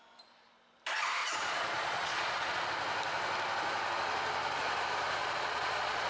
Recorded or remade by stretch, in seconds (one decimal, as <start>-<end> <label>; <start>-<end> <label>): 0.0-1.2 recorded; 1.2-2.7 remade; 2.7-5.2 recorded; 5.2-6.1 remade